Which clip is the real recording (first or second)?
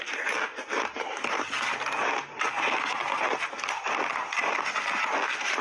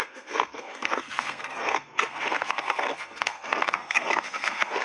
first